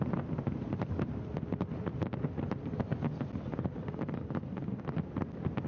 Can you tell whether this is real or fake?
real